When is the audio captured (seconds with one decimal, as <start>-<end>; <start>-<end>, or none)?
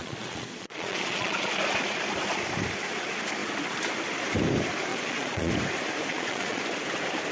1.5-4.9; 5.5-6.1; 6.6-7.3